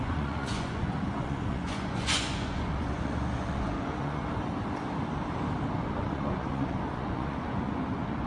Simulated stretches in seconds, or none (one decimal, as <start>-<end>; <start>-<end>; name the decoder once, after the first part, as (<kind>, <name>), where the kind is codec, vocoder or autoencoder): 0.0-4.2 (vocoder, Vocos); 6.0-8.3